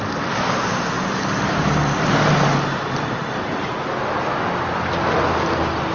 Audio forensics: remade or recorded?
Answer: recorded